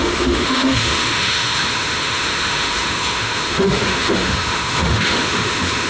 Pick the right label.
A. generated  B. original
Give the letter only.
A